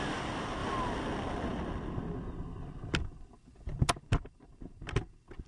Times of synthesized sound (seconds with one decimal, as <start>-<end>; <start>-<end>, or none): none